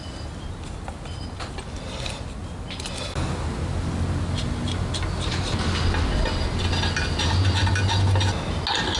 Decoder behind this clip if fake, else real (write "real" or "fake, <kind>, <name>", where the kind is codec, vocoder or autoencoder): real